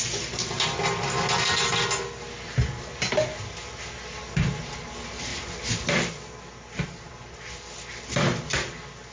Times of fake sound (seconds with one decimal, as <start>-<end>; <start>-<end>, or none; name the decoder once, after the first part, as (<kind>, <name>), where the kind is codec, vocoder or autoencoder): none